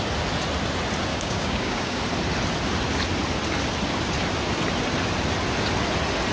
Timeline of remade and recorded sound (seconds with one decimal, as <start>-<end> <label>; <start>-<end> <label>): 0.0-1.1 recorded; 1.1-2.0 remade; 2.0-6.3 recorded